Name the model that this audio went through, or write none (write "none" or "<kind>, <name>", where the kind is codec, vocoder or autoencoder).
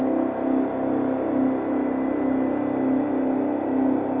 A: none